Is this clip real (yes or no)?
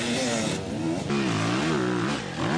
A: yes